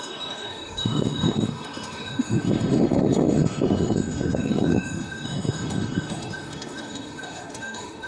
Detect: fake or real fake